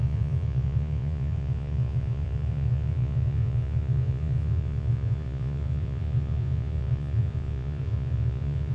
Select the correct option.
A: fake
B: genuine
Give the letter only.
A